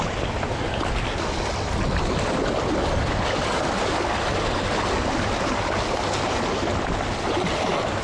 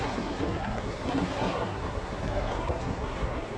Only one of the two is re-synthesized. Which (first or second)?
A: second